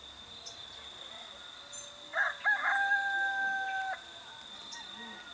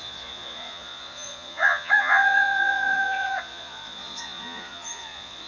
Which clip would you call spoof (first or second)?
second